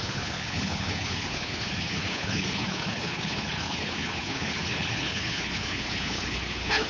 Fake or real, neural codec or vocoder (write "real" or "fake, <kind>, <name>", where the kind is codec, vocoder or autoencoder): fake, codec, HILCodec